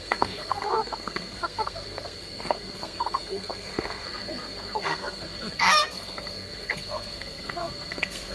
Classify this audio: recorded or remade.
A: remade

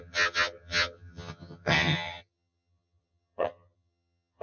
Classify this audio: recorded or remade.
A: remade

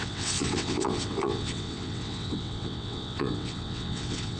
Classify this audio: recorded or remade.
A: remade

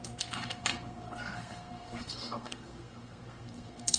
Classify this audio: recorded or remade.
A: remade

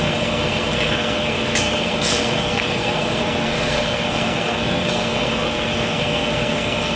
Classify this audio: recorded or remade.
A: remade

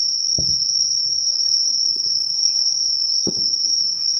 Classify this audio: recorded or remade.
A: remade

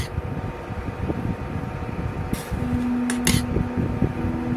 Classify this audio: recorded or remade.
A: recorded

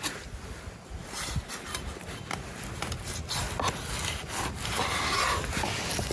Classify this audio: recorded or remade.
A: recorded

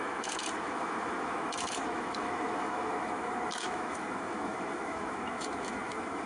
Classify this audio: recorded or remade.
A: remade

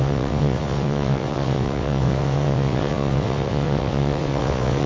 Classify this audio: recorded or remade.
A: remade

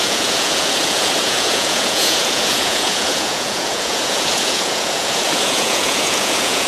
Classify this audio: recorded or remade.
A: remade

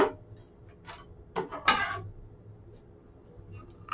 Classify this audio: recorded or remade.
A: recorded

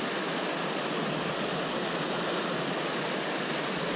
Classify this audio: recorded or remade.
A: recorded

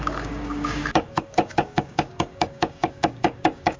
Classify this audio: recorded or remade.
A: remade